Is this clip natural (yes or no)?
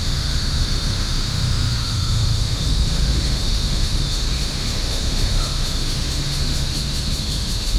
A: no